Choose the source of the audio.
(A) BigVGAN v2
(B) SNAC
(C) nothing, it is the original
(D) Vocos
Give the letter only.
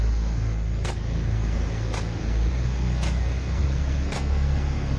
B